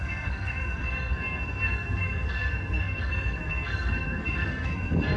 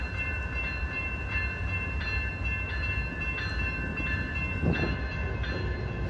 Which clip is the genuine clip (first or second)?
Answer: second